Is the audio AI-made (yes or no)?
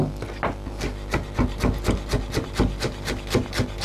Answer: no